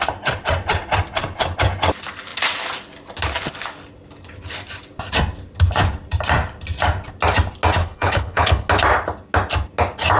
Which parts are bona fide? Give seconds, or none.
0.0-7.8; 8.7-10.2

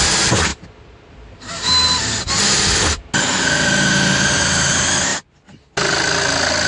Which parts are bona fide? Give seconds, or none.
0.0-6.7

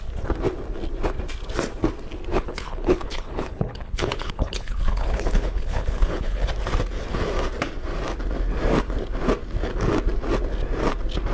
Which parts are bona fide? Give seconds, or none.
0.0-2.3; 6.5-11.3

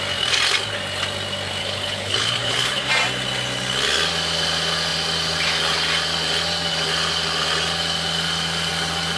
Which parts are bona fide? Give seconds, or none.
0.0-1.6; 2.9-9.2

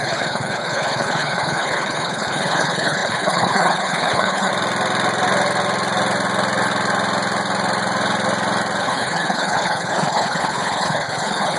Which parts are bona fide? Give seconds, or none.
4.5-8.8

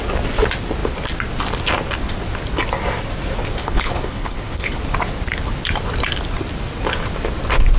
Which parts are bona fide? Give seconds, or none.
0.0-3.6; 4.8-7.8